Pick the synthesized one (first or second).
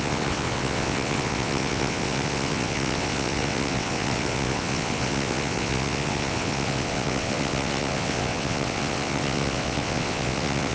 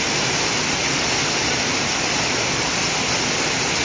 first